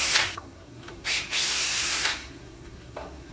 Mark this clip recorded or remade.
remade